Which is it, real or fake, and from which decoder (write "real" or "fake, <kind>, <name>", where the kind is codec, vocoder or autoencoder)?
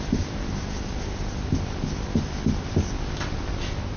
real